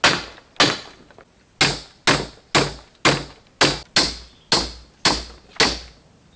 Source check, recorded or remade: recorded